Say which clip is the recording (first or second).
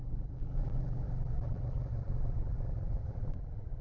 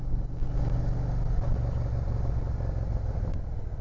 second